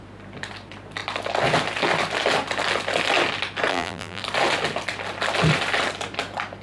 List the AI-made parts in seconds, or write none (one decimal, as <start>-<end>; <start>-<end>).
3.7-4.2